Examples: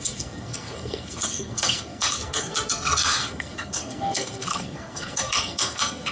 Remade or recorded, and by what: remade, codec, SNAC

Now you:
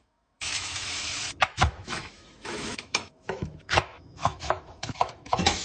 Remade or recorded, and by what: remade, autoencoder, DAC-VAE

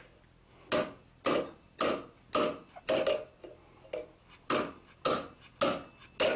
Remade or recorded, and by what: recorded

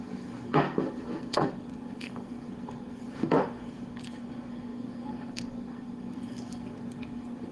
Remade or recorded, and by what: remade, codec, SNAC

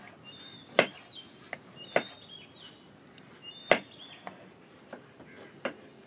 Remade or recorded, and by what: recorded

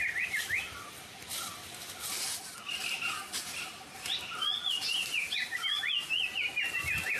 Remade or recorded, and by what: recorded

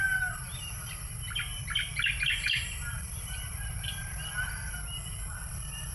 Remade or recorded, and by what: recorded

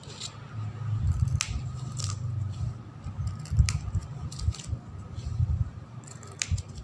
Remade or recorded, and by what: recorded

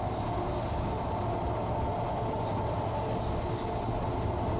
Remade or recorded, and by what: recorded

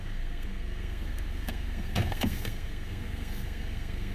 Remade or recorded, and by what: remade, codec, SNAC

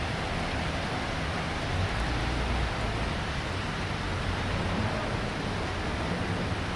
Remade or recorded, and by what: recorded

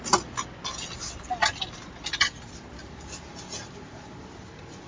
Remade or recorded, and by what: recorded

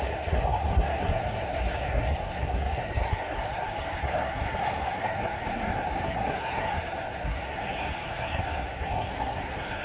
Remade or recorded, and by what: remade, codec, SNAC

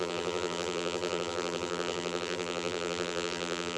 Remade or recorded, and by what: remade, vocoder, BigVGAN v2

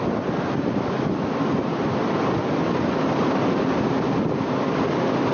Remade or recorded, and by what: recorded